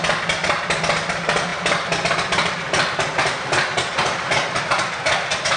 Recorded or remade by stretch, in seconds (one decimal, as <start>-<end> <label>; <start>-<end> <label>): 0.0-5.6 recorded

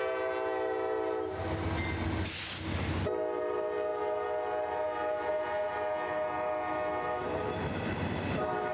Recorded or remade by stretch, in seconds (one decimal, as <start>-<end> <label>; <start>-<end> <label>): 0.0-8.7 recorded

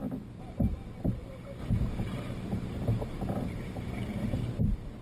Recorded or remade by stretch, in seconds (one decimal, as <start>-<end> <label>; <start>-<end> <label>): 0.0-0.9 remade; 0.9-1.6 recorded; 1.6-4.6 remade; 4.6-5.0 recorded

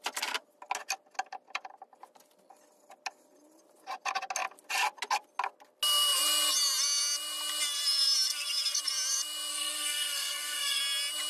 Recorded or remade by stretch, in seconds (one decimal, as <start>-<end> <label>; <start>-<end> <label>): 0.0-9.5 recorded; 9.5-10.8 remade; 10.8-11.3 recorded